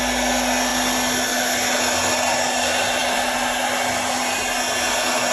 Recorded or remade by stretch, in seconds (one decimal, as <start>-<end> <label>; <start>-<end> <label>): 0.0-5.3 recorded